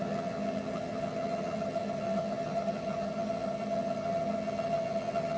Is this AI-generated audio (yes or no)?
yes